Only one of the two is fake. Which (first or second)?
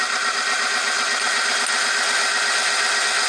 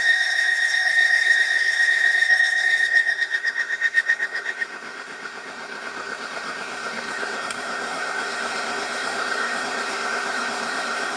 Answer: second